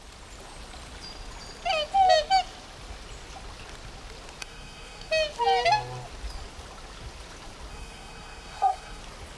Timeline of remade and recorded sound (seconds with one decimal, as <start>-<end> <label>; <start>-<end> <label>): 0.0-4.4 recorded; 4.4-5.1 remade; 5.1-7.7 recorded; 7.7-9.0 remade; 9.0-9.4 recorded